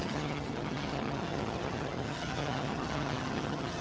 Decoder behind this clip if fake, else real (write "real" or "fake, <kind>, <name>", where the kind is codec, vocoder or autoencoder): fake, vocoder, HiFi-GAN